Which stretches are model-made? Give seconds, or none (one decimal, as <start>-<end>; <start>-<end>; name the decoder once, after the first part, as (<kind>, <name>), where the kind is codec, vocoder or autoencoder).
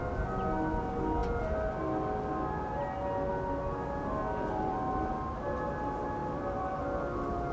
6.2-6.8 (vocoder, BigVGAN v2)